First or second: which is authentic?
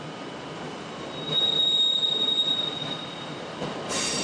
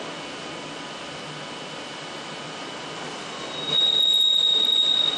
second